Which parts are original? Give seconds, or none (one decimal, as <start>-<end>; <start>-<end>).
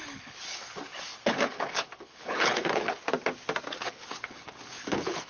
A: 3.0-3.8